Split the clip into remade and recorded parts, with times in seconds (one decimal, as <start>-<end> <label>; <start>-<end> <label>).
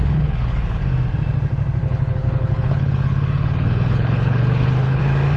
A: 0.0-0.8 remade; 0.8-1.8 recorded; 1.8-5.0 remade; 5.0-5.4 recorded